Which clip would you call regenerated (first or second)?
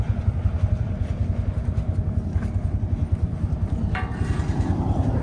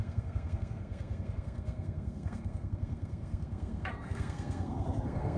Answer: second